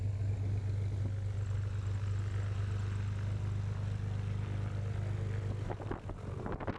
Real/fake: real